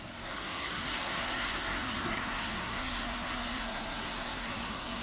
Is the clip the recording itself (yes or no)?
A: no